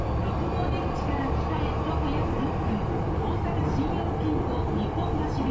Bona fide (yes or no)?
yes